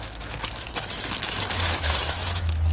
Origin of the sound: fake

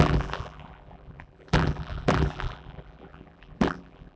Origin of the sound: fake